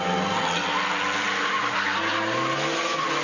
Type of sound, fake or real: real